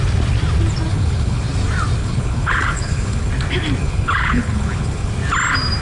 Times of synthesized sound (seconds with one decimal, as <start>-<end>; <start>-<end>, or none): 0.9-1.4; 2.0-3.3; 3.8-5.1